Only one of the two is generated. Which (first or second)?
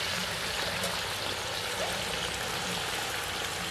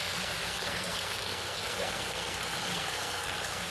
second